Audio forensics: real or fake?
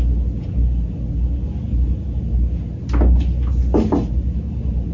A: real